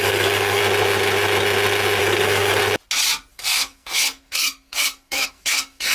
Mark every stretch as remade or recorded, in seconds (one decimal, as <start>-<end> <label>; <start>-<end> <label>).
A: 0.0-0.6 remade; 0.6-2.0 recorded; 2.0-2.6 remade; 2.6-3.3 recorded; 3.3-5.9 remade